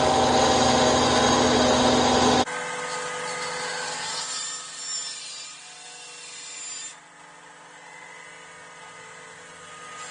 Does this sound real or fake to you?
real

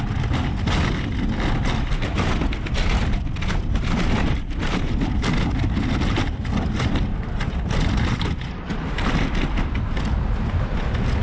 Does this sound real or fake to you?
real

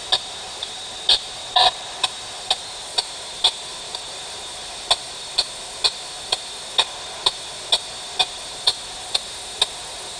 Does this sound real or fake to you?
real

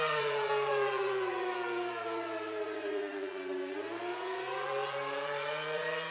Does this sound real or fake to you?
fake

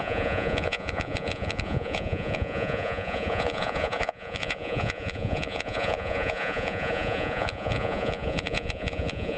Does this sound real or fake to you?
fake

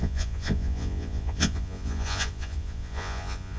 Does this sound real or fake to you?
fake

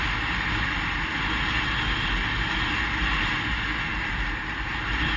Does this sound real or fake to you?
real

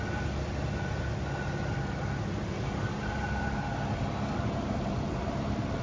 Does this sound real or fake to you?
real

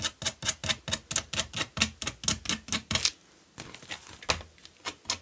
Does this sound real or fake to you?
real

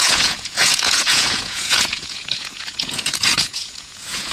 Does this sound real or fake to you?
fake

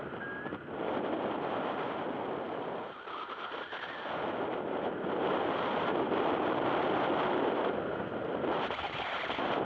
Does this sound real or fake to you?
real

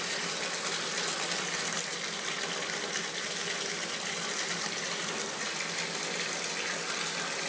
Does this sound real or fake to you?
real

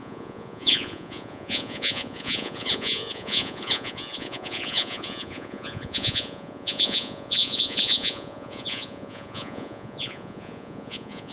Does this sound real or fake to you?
fake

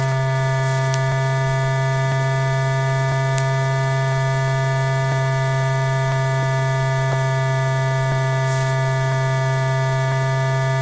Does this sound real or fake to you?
real